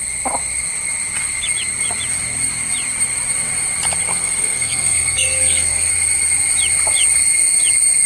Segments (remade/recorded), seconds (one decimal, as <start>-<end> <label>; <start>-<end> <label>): 0.0-4.1 recorded; 4.1-5.9 remade; 5.9-8.1 recorded